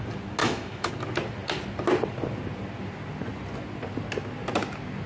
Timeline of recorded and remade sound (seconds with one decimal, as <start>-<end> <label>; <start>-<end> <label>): 0.0-0.4 recorded; 0.4-0.9 remade; 0.9-5.1 recorded